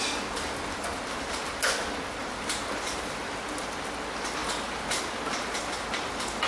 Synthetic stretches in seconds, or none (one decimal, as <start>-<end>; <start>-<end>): 2.2-3.4